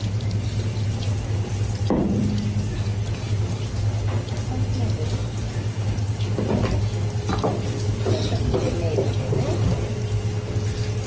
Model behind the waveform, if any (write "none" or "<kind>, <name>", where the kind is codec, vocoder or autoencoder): none